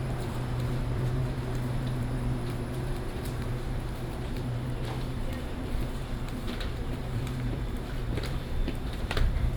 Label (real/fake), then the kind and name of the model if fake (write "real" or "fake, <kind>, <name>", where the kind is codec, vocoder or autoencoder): fake, vocoder, BigVGAN v2